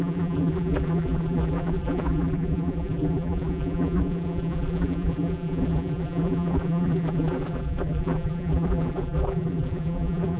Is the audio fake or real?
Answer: fake